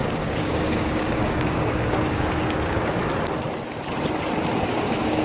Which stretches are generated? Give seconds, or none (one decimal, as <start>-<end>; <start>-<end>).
0.0-3.0; 4.7-5.2